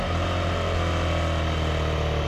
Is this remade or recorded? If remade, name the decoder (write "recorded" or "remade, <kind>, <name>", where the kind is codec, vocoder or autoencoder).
recorded